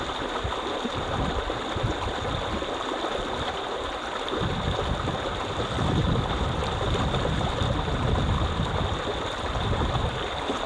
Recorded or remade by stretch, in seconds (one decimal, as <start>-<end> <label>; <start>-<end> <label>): 0.0-10.7 recorded